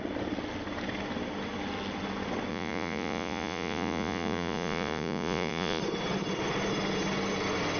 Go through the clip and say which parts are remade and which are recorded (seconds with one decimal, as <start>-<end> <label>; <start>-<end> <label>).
0.0-2.5 recorded; 2.5-5.8 remade; 5.8-7.8 recorded